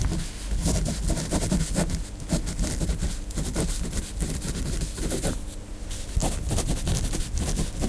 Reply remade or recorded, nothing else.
recorded